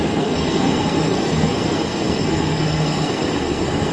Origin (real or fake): fake